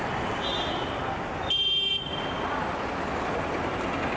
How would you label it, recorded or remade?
recorded